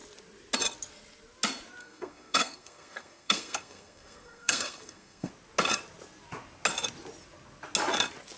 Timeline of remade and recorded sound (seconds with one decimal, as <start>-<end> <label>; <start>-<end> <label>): 0.0-1.8 recorded; 1.8-5.3 remade; 5.3-8.4 recorded